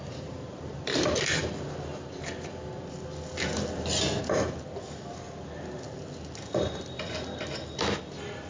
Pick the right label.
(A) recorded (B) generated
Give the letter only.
A